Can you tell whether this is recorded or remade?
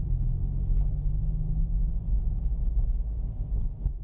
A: recorded